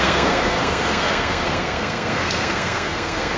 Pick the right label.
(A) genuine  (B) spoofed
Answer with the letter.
B